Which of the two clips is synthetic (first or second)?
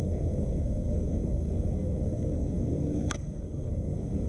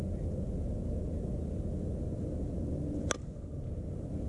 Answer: first